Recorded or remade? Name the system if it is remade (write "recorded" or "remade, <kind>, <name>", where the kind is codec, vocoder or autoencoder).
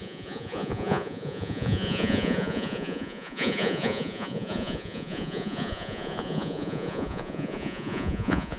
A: remade, vocoder, Vocos